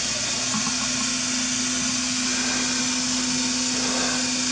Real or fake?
real